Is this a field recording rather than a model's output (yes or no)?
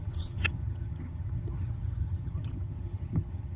no